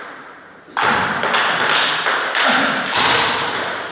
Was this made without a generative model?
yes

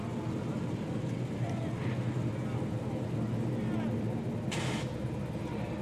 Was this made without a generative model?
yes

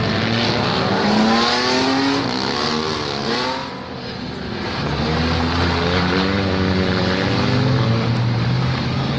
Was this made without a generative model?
yes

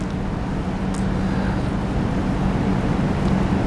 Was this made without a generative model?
yes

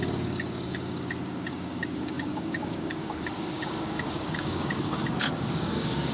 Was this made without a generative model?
no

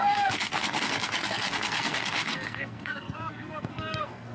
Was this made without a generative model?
no